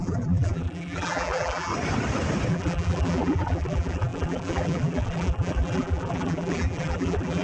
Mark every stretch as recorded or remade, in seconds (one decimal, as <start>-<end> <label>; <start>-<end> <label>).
0.0-1.7 remade; 1.7-2.5 recorded; 2.5-7.4 remade